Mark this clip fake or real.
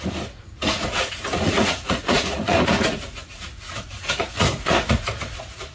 fake